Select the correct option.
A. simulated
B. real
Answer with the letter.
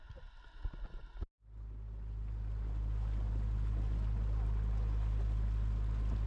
B